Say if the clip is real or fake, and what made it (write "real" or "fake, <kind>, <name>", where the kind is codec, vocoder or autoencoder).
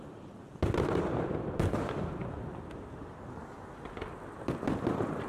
fake, vocoder, BigVGAN v2